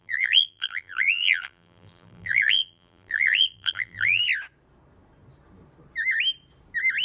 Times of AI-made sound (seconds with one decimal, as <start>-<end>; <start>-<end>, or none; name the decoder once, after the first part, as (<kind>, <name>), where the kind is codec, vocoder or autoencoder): 0.0-4.2 (vocoder, BigVGAN v2)